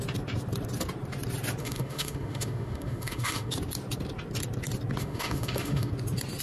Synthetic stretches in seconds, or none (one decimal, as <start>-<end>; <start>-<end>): 1.6-3.5; 5.0-5.9